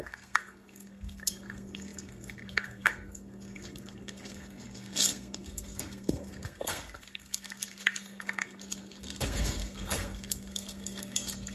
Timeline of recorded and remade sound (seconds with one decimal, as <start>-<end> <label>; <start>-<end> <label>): 0.0-11.5 remade